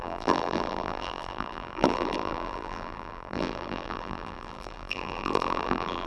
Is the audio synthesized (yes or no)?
yes